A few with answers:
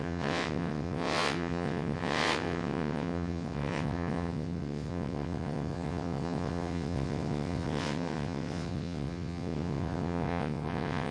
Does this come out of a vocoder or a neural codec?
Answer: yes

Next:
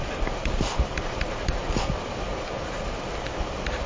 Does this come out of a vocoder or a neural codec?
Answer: no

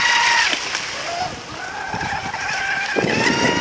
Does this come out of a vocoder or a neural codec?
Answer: no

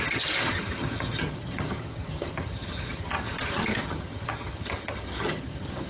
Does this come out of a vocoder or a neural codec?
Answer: yes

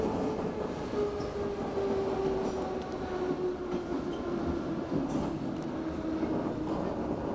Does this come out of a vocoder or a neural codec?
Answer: no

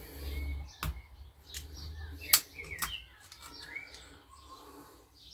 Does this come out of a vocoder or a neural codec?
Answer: no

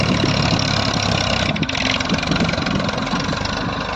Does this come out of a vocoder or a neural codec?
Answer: no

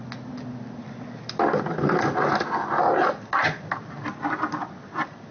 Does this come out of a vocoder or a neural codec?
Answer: no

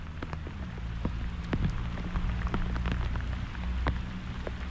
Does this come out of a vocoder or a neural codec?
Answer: no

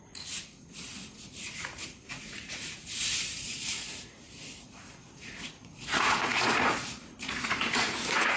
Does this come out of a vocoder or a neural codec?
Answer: yes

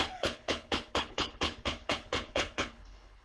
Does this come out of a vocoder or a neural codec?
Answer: yes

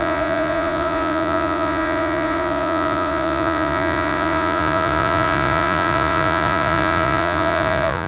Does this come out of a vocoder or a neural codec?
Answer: yes